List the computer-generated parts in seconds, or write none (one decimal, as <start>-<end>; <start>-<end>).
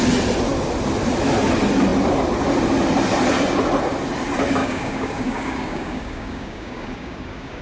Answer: 4.6-7.6